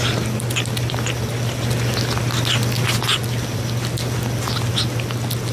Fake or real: real